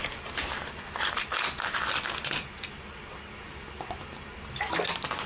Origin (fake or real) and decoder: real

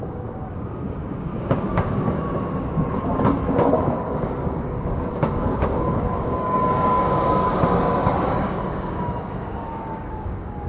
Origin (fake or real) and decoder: fake, codec, DAC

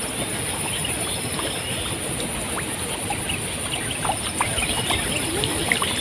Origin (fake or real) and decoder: real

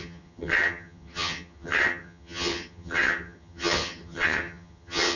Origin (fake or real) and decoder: fake, vocoder, HiFi-GAN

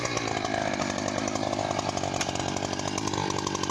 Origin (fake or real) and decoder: real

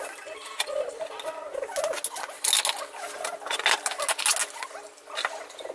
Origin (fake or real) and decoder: real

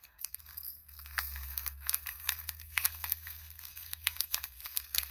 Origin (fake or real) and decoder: fake, codec, SNAC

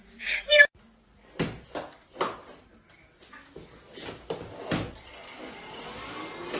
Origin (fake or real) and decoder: real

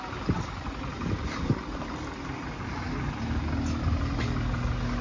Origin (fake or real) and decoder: real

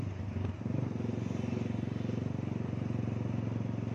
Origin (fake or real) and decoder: real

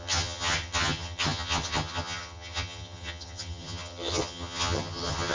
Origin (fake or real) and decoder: fake, vocoder, HiFi-GAN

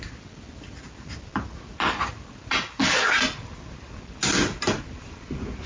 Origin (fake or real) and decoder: real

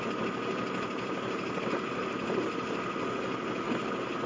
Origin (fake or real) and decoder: real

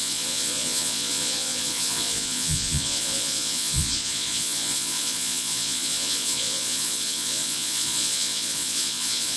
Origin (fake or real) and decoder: fake, vocoder, Vocos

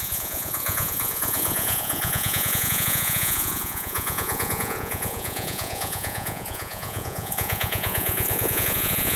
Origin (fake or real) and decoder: fake, vocoder, Vocos